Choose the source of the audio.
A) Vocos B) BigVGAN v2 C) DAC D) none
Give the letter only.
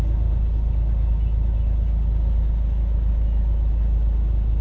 D